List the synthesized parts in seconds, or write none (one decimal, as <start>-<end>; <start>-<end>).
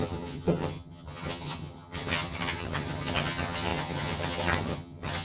0.0-5.2